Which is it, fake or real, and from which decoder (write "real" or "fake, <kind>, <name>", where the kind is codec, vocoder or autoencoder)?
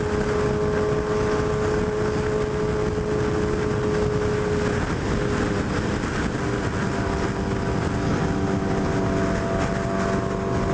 real